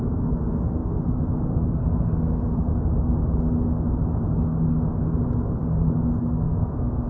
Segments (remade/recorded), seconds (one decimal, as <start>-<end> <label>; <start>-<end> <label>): 0.0-2.7 remade; 2.7-6.2 recorded; 6.2-7.1 remade